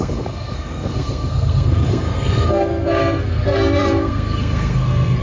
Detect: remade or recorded remade